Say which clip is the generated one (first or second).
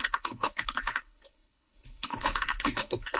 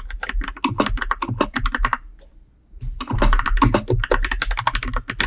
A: first